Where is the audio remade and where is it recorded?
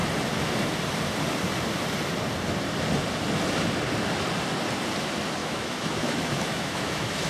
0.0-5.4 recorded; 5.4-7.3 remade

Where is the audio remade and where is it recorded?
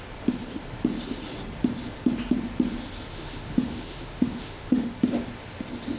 0.0-3.1 recorded; 3.1-4.9 remade; 4.9-6.0 recorded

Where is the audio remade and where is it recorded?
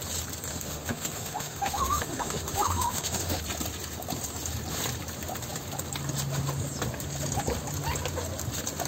0.0-0.5 recorded; 0.5-3.4 remade; 3.4-8.9 recorded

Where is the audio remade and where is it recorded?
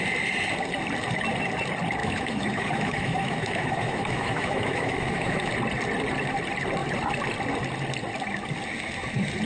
0.0-2.0 recorded; 2.0-5.5 remade; 5.5-9.5 recorded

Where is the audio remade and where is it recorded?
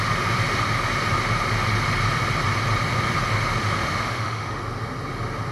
0.0-3.6 recorded; 3.6-4.6 remade; 4.6-5.5 recorded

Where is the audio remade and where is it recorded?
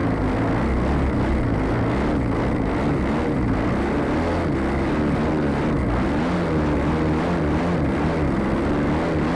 0.0-9.3 recorded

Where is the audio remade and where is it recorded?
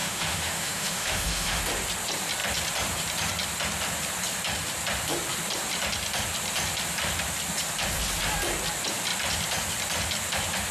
0.0-1.6 remade; 1.6-10.7 recorded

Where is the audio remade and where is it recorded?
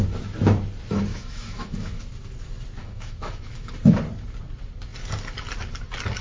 0.0-1.1 recorded; 1.1-2.0 remade; 2.0-2.8 recorded; 2.8-3.7 remade; 3.7-6.2 recorded